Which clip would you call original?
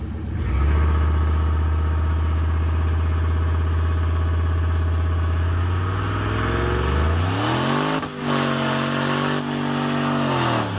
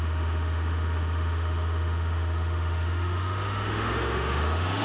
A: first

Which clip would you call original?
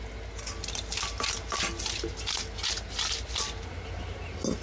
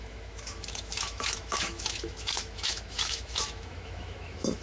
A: first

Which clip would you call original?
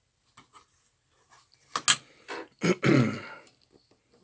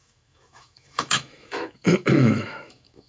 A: first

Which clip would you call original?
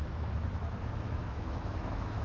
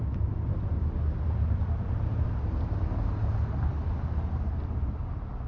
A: second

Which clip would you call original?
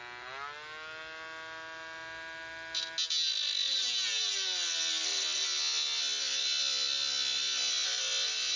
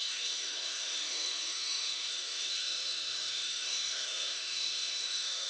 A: first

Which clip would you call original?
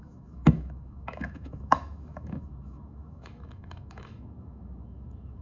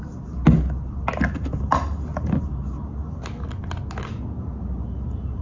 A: second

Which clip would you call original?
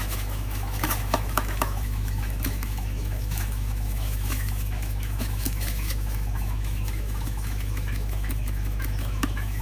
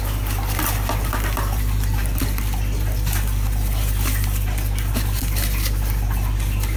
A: second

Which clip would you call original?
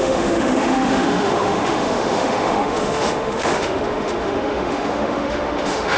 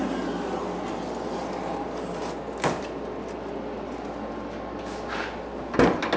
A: second